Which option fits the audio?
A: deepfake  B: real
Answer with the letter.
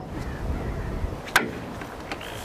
B